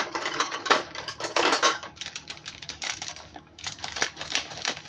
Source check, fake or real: fake